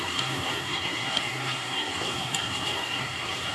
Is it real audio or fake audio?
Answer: fake